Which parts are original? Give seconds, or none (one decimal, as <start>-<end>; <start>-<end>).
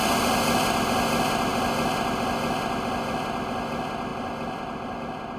0.0-4.1; 5.0-5.4